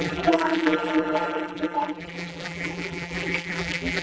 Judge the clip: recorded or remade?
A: remade